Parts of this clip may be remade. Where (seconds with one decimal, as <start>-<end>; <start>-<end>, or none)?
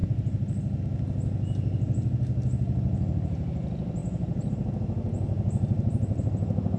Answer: 5.1-6.3